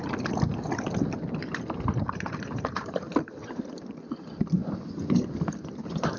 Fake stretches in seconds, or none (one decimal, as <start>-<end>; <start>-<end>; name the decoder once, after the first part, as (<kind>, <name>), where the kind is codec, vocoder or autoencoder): 1.4-3.7 (vocoder, BigVGAN v2)